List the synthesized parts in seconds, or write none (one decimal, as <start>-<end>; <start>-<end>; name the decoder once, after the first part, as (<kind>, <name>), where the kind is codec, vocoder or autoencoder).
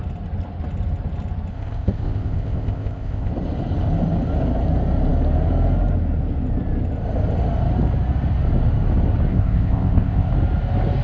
1.5-3.3 (codec, ZipCodec); 9.3-10.3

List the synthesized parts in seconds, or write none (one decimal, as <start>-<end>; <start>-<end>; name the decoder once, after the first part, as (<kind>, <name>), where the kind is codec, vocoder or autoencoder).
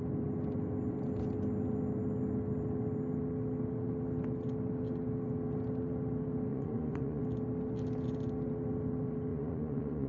6.5-7.2 (vocoder, Vocos); 9.3-10.1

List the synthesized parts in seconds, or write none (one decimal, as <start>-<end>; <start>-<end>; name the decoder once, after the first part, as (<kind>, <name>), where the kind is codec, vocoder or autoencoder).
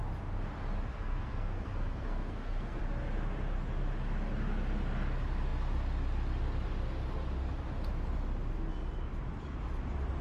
0.9-2.8 (codec, SNAC)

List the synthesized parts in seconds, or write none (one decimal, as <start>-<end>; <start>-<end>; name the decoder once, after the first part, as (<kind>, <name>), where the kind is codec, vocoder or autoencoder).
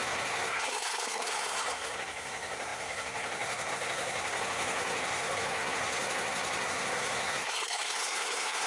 0.0-8.7 (codec, SNAC)